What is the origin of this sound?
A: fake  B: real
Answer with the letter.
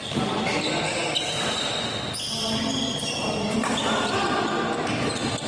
B